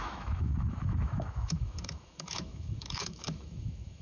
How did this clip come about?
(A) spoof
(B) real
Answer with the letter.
A